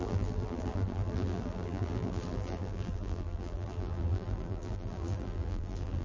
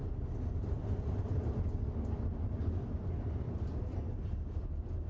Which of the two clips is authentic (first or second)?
second